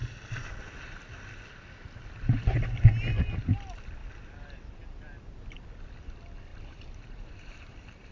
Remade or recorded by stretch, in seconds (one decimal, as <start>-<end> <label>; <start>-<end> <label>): 0.0-6.5 recorded; 6.5-8.1 remade

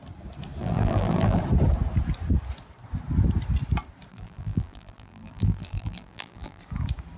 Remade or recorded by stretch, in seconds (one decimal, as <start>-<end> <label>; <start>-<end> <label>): 0.0-0.6 recorded; 0.6-1.4 remade; 1.4-4.1 recorded; 4.1-6.6 remade; 6.6-7.2 recorded

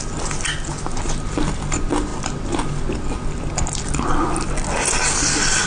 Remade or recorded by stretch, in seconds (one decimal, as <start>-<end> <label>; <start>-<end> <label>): 0.0-5.7 recorded